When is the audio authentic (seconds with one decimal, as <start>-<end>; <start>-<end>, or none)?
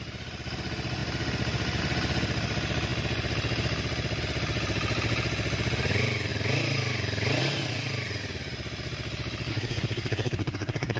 0.0-9.5